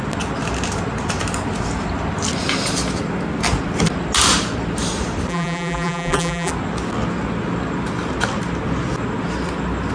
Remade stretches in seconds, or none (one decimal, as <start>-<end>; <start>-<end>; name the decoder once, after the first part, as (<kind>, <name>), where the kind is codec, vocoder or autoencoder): 5.3-6.5 (vocoder, BigVGAN v2)